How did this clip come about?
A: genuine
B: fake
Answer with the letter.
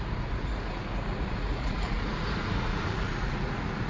B